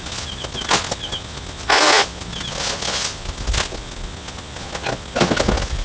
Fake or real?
real